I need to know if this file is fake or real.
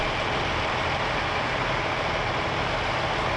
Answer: real